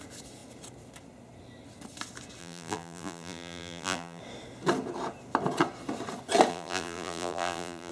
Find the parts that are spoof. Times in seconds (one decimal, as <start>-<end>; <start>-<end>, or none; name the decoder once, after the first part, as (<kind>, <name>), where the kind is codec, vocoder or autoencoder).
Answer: 2.4-4.2 (vocoder, BigVGAN v2); 6.5-7.9